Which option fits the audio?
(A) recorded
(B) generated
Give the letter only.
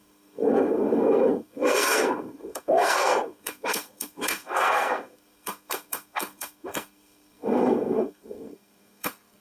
B